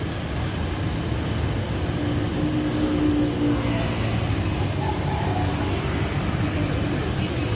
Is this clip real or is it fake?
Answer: real